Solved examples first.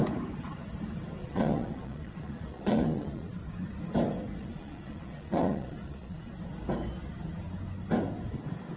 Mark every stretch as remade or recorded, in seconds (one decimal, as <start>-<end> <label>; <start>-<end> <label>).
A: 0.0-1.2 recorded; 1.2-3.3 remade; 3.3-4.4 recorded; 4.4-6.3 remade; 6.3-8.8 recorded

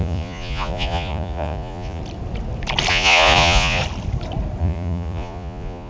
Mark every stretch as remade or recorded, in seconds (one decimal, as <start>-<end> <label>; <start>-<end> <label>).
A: 0.0-2.0 remade; 2.0-2.9 recorded; 2.9-3.8 remade; 3.8-4.6 recorded; 4.6-5.9 remade

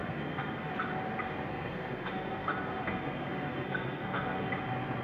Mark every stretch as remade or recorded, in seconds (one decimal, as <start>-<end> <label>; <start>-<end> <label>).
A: 0.0-0.7 remade; 0.7-1.5 recorded; 1.5-4.5 remade; 4.5-5.0 recorded